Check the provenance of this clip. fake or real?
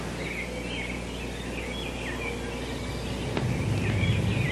real